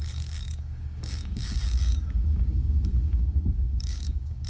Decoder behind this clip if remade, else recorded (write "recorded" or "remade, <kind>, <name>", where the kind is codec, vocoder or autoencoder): remade, codec, DAC